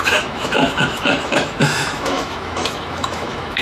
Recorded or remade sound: remade